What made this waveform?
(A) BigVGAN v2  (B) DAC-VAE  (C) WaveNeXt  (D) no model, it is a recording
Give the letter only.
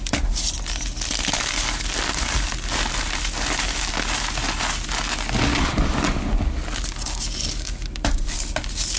D